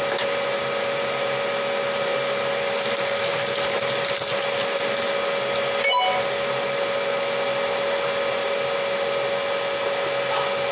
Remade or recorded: recorded